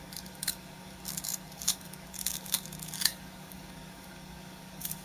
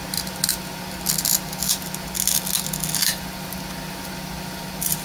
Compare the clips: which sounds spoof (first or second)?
first